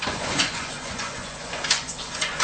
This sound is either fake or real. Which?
fake